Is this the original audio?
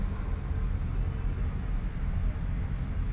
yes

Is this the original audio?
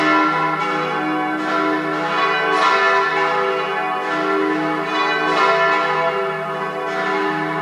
yes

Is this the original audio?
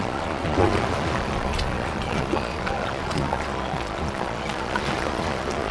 no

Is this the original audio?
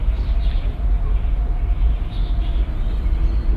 yes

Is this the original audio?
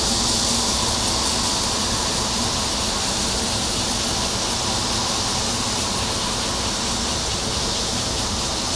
yes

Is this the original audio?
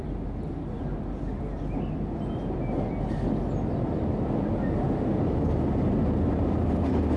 yes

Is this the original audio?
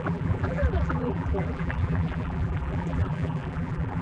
no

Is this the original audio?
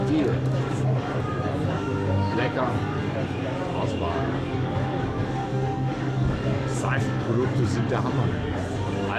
no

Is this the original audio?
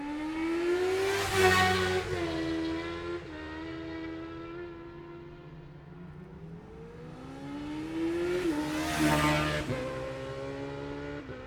yes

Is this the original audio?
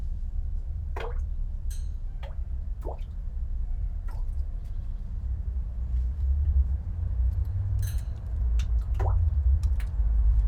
no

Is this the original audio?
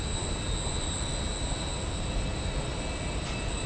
yes